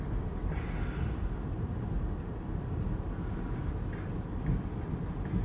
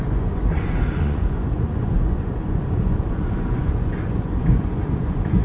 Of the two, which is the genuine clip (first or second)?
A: first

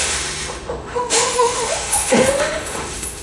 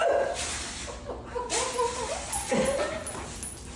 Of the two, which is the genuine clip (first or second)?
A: second